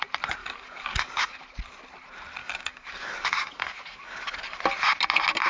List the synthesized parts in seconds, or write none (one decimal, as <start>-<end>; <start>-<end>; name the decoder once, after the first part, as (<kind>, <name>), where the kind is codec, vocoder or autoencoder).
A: 0.4-1.4 (codec, DAC); 2.4-4.6